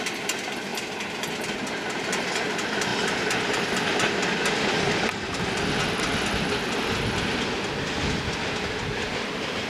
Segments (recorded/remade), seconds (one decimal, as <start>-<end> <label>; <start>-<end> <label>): 0.0-0.7 recorded; 0.7-1.3 remade; 1.3-2.9 recorded; 2.9-5.1 remade; 5.1-9.7 recorded